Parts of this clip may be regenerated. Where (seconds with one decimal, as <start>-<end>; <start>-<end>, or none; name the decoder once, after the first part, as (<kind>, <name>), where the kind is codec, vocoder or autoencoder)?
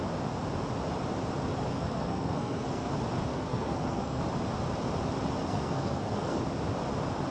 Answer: 1.7-2.9 (codec, SNAC); 3.3-4.2; 5.4-6.4